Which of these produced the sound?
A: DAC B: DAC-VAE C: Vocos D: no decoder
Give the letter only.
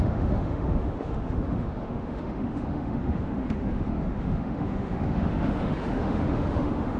B